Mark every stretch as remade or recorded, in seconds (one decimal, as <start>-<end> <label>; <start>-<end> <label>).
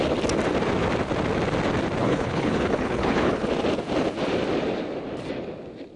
0.0-2.0 recorded; 2.0-3.5 remade; 3.5-6.0 recorded